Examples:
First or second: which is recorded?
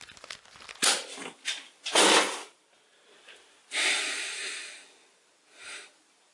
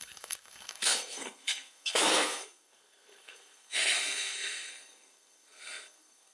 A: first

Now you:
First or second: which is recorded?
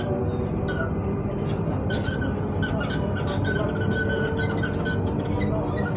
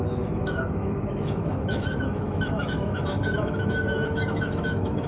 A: first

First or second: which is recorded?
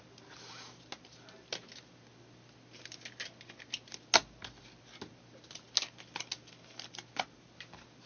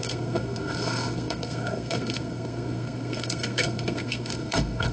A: first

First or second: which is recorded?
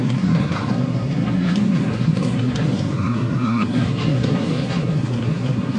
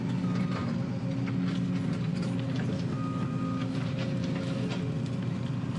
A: second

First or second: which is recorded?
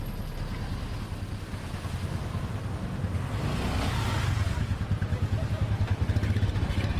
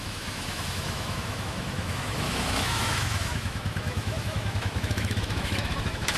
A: first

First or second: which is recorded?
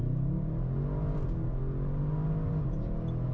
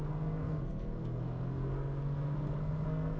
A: first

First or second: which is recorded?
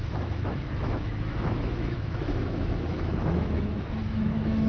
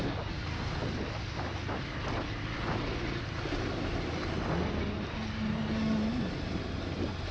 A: second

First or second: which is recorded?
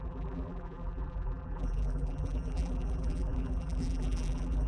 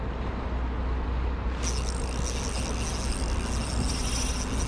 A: second